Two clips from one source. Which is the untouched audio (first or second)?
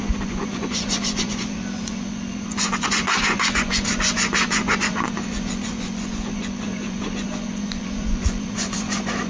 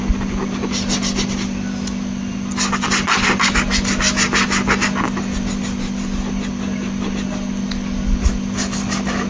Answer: second